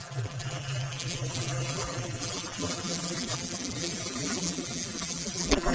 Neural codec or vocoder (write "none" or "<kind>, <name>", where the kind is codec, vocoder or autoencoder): vocoder, BigVGAN v2